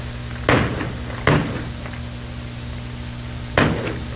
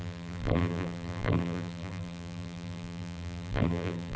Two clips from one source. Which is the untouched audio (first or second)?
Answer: first